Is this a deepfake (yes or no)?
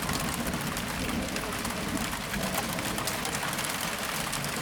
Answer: no